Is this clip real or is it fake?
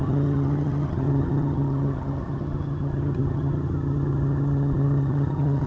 fake